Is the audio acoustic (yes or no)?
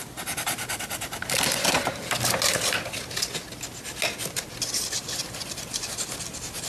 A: yes